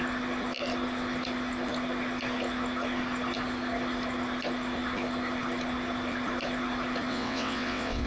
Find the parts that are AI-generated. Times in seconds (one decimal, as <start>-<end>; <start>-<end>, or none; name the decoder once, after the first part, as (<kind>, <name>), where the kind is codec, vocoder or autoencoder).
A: 7.1-8.1 (vocoder, WaveNeXt)